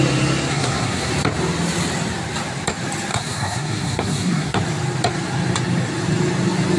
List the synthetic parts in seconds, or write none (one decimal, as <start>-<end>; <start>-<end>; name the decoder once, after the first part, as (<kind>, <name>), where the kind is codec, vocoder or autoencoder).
0.5-1.1 (codec, SNAC); 3.1-4.6